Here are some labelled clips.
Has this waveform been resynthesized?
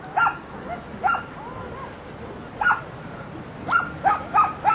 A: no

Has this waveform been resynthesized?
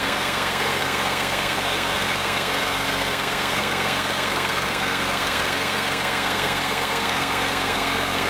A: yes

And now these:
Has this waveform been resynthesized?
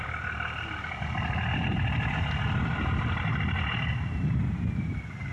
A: no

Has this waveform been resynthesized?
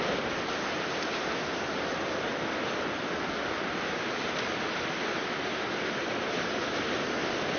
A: no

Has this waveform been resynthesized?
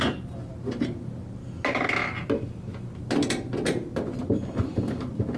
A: no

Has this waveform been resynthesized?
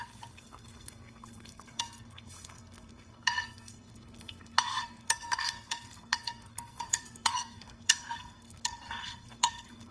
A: yes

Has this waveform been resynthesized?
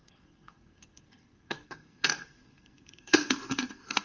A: yes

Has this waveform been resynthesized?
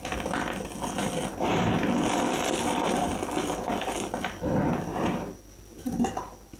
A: no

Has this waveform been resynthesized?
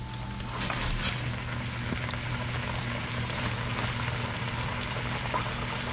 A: no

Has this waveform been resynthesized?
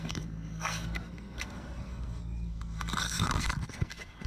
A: yes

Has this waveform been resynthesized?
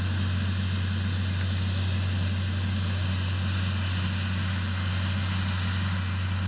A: no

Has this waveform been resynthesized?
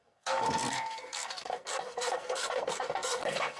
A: yes